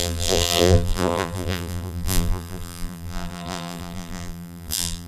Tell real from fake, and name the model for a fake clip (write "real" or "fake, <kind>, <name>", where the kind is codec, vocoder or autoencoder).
fake, vocoder, BigVGAN v2